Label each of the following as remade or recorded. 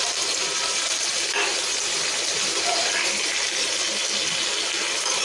recorded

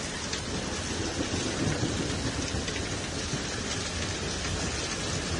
recorded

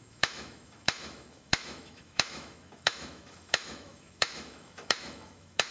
remade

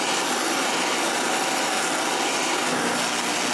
recorded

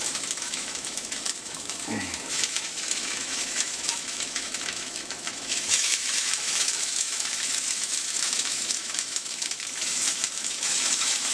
remade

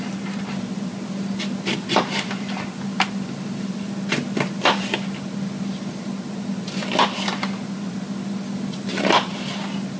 recorded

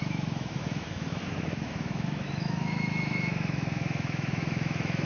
remade